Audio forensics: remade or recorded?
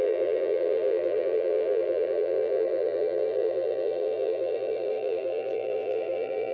remade